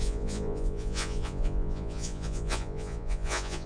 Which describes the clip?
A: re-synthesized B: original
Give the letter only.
A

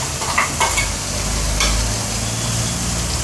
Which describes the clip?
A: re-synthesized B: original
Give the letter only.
B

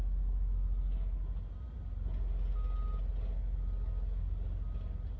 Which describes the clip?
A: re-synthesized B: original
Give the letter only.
B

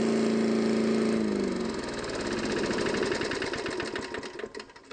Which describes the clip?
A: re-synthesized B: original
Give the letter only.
B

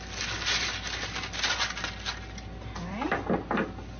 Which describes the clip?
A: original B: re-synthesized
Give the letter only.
A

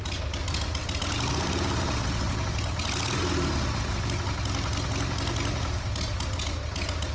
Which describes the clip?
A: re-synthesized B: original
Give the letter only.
B